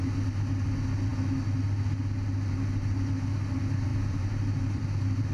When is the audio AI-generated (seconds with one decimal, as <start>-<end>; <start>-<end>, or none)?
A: 3.9-5.3